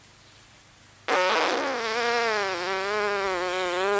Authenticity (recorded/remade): recorded